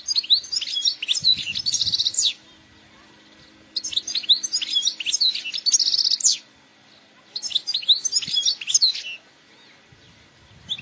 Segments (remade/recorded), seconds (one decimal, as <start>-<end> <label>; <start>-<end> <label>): 0.0-1.2 recorded; 1.2-2.5 remade; 2.5-10.8 recorded